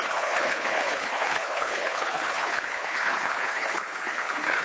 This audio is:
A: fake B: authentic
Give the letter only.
A